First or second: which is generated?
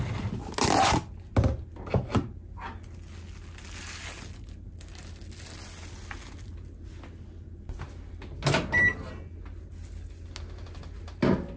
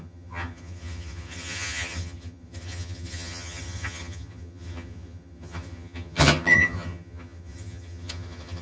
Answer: second